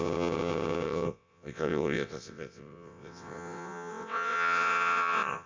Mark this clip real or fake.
fake